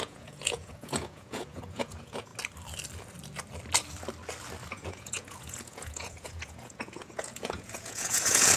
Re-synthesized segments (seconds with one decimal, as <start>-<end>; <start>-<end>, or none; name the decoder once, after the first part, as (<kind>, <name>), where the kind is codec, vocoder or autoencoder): 0.0-2.3 (vocoder, Vocos); 4.7-8.6